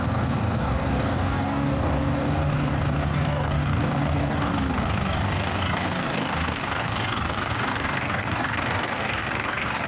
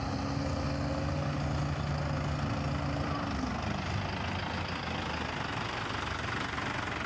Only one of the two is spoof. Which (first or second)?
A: first